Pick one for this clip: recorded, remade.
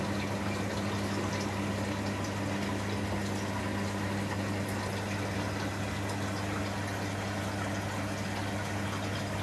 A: recorded